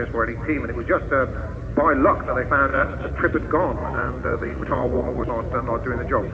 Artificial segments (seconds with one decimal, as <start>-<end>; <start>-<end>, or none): 2.7-3.2; 3.8-5.3